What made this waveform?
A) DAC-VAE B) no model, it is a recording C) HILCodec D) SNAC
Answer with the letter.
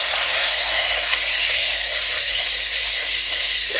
D